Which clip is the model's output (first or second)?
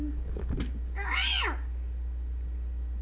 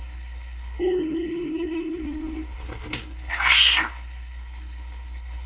second